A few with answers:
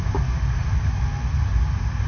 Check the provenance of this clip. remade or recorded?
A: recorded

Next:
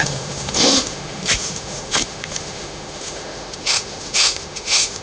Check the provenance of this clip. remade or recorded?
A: remade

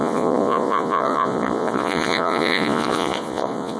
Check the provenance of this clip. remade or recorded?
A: remade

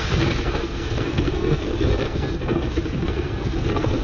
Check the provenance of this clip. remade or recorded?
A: remade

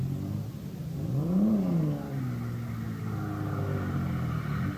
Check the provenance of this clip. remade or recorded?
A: recorded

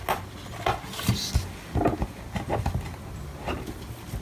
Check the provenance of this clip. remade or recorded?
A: recorded